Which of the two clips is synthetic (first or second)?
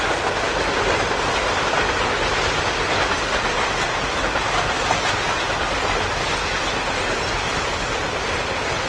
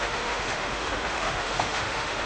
second